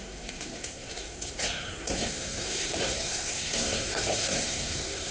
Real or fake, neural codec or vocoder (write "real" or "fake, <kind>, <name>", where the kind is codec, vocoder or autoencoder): fake, codec, SNAC